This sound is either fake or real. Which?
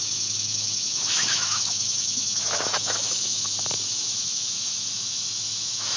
fake